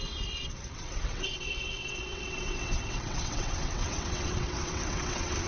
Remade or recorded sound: remade